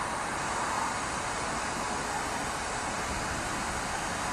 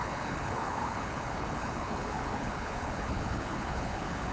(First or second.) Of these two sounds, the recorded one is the first